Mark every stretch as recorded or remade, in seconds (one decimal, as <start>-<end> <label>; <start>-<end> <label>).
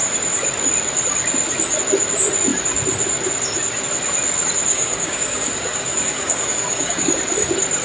0.0-4.7 recorded; 4.7-7.1 remade; 7.1-7.8 recorded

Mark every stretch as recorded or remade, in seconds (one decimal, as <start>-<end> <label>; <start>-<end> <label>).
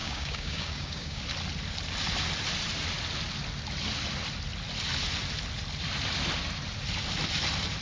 0.0-1.2 remade; 1.2-7.8 recorded